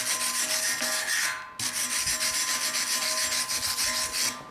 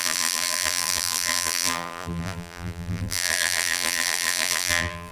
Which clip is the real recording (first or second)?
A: first